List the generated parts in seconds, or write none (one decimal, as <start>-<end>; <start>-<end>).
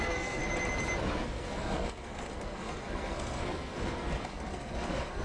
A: 0.0-0.4; 1.2-5.2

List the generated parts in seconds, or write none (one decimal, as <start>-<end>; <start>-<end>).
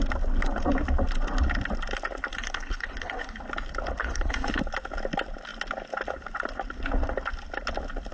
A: 2.3-3.4; 4.0-4.6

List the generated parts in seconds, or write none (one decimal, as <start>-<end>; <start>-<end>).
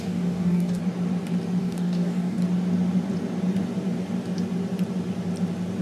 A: 0.0-0.8; 1.6-2.4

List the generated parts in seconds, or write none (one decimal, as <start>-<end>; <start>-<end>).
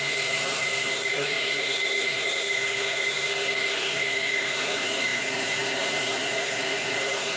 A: 0.0-7.4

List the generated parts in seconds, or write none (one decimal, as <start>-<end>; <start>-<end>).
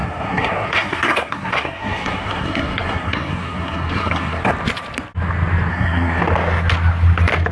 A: 0.0-4.5; 5.7-6.2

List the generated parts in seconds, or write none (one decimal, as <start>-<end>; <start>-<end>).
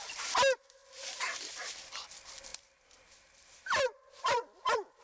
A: 0.8-1.4; 2.5-5.0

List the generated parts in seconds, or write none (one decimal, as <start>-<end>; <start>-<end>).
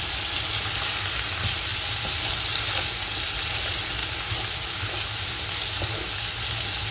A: 4.0-4.8